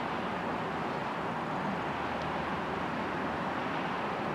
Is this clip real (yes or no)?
yes